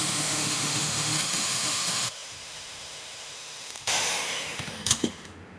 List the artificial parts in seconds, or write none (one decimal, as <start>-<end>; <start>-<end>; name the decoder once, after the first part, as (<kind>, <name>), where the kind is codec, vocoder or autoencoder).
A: 0.0-5.6 (autoencoder, DAC-VAE)